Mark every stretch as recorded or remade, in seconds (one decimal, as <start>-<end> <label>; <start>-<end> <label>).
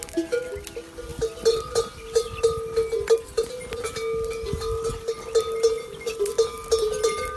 0.0-7.4 recorded